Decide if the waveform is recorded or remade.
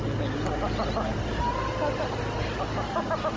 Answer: recorded